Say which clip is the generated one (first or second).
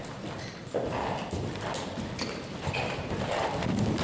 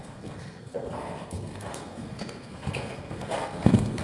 second